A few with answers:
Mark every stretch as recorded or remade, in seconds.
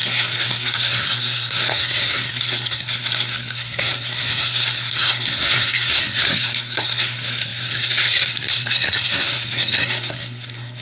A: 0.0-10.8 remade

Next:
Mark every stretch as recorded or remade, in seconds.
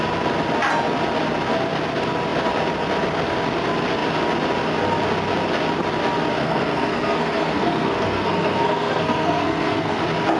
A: 0.0-6.4 recorded; 6.4-10.0 remade; 10.0-10.4 recorded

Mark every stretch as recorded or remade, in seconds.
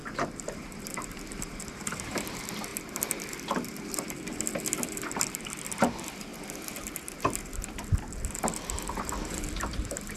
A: 0.0-6.3 remade; 6.3-9.3 recorded; 9.3-10.2 remade